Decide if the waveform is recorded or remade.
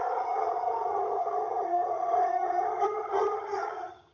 remade